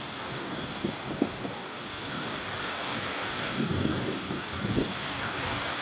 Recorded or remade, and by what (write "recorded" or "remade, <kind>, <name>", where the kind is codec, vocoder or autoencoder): remade, codec, DAC